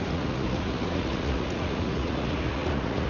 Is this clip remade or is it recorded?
remade